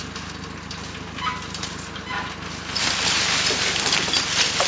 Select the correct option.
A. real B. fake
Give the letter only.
A